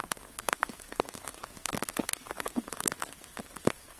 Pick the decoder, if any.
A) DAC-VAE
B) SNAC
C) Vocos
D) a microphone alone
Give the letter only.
B